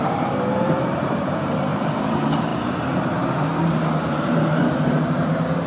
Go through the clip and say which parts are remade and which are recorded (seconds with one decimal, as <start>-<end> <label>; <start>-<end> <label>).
0.0-5.7 remade